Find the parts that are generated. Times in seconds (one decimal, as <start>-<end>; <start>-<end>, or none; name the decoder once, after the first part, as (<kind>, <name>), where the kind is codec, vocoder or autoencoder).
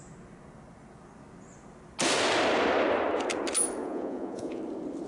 3.8-4.6 (vocoder, Vocos)